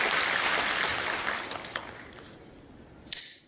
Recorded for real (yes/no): yes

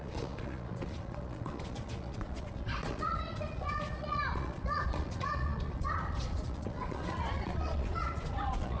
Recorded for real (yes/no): no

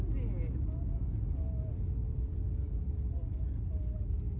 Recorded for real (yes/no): yes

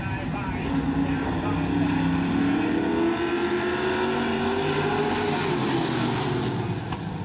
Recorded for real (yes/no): yes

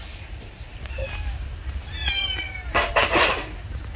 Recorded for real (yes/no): yes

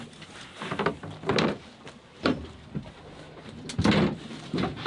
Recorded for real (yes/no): yes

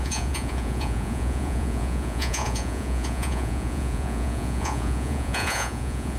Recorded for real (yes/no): no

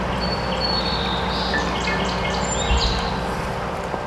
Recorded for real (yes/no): yes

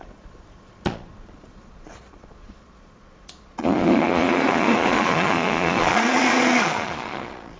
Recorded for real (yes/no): no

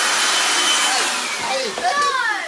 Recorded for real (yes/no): yes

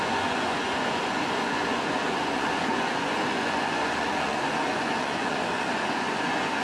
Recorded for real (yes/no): no